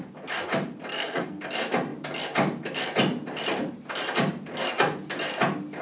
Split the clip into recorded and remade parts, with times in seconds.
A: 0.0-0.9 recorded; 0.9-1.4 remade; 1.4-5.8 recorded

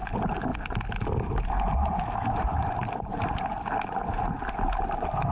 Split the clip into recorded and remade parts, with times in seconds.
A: 0.0-5.3 recorded

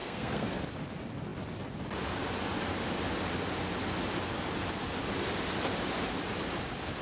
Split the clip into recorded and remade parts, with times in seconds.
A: 0.0-0.6 remade; 0.6-7.0 recorded

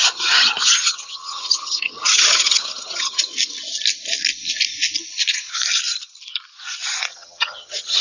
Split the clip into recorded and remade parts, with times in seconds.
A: 0.0-3.2 remade; 3.2-7.1 recorded; 7.1-8.0 remade

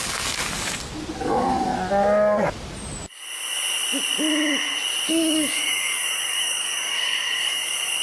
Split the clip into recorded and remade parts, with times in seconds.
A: 0.0-0.4 remade; 0.4-1.2 recorded; 1.2-1.7 remade; 1.7-5.1 recorded; 5.1-8.0 remade

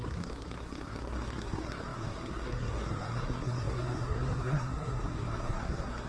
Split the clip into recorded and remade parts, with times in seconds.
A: 0.0-6.1 remade

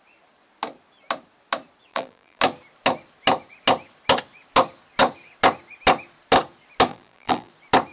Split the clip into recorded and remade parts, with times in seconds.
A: 0.0-1.9 recorded; 1.9-2.4 remade; 2.4-6.9 recorded; 6.9-7.5 remade; 7.5-7.9 recorded